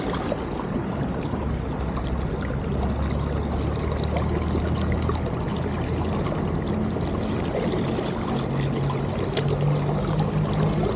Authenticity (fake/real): real